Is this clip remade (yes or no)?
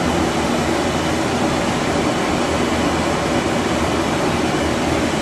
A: no